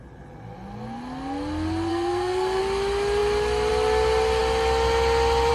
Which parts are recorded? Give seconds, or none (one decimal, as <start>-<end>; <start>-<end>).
0.0-1.9; 2.6-5.5